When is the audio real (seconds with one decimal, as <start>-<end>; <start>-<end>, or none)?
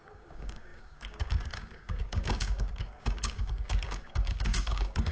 none